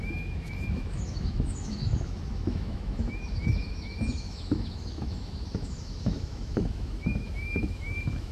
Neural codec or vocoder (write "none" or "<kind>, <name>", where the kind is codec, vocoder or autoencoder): autoencoder, DAC-VAE